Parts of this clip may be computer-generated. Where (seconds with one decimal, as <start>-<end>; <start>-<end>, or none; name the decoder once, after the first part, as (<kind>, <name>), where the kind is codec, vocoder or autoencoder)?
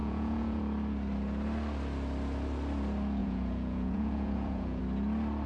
0.0-0.6 (vocoder, Vocos); 3.2-4.8